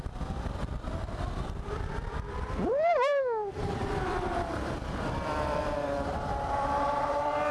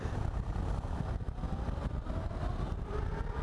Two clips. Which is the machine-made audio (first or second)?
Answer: first